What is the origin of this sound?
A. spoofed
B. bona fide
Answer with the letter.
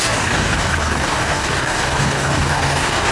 A